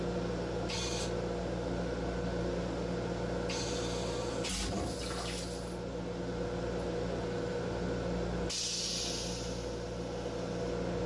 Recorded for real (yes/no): yes